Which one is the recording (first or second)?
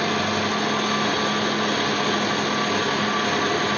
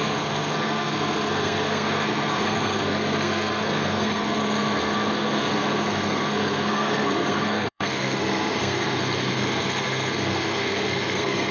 first